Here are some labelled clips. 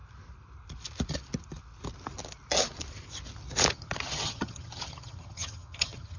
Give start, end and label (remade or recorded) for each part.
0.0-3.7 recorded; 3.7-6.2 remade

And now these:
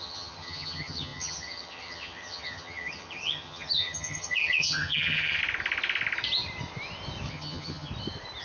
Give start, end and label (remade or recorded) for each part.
0.0-5.4 remade; 5.4-7.3 recorded; 7.3-7.9 remade; 7.9-8.4 recorded

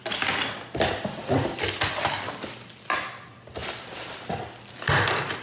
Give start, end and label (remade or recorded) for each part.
0.0-5.4 recorded

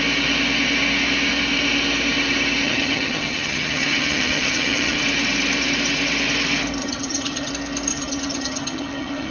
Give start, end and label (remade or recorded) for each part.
0.0-2.6 recorded; 2.6-5.0 remade; 5.0-6.8 recorded; 6.8-7.5 remade; 7.5-7.9 recorded; 7.9-9.3 remade